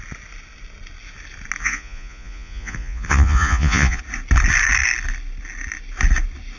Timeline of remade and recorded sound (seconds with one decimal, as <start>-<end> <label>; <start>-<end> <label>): 0.0-1.6 recorded; 1.6-4.0 remade; 4.0-6.6 recorded